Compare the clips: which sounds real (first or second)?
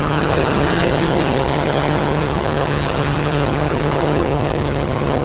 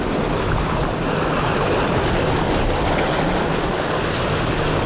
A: second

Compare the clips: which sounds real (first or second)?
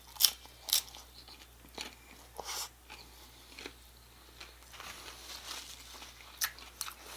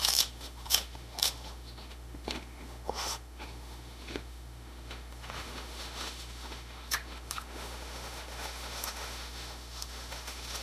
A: first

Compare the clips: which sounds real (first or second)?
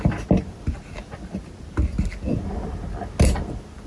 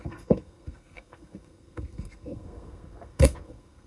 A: first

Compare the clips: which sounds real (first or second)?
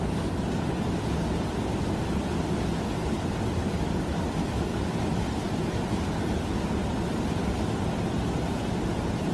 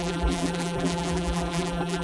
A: first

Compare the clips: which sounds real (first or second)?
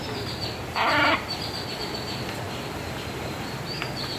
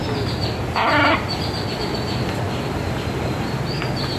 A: second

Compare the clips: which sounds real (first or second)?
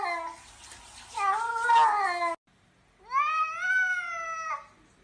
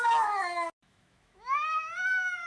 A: first